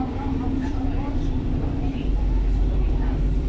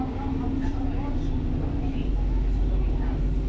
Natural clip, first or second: second